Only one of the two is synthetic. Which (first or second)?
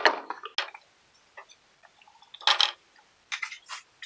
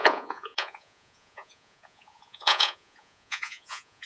second